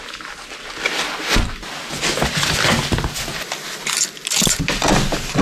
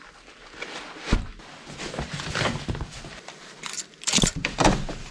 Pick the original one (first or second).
first